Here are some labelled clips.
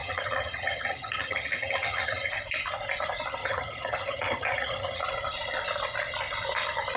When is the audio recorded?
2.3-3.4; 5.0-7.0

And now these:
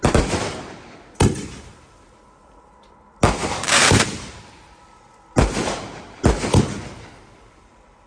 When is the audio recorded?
0.0-3.4; 4.6-8.1

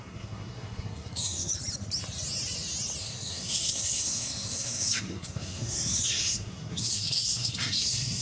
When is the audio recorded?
1.5-3.0

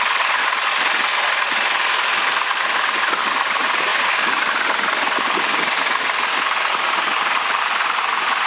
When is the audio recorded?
0.0-8.5